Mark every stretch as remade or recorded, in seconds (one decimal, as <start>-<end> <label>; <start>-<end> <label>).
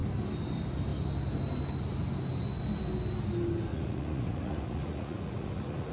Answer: 0.0-3.7 recorded; 3.7-5.9 remade